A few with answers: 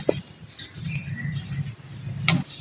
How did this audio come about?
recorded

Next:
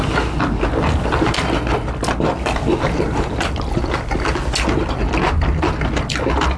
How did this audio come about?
recorded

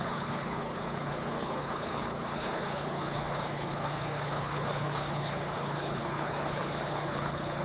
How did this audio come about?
remade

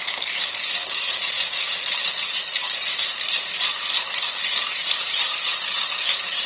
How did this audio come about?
remade